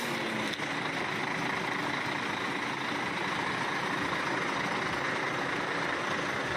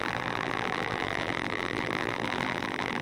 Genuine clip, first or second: first